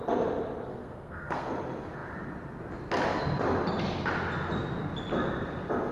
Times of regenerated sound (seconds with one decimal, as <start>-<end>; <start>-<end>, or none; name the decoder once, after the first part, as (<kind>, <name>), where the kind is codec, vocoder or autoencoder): 0.7-1.5 (codec, SNAC)